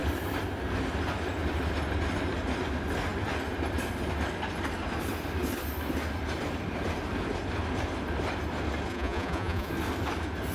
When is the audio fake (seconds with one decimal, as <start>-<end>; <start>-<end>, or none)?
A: 8.9-9.7